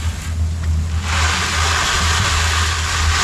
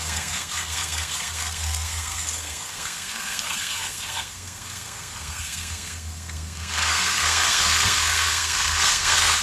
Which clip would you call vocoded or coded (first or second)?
second